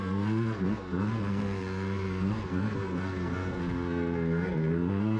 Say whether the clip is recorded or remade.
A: remade